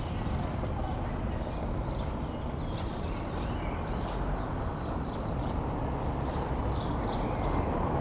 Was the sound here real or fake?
real